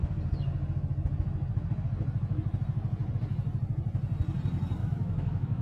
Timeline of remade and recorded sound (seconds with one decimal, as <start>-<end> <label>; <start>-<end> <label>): 0.0-4.8 recorded; 4.8-5.6 remade